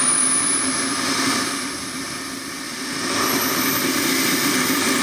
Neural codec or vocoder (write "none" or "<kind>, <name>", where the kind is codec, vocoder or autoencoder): vocoder, BigVGAN v2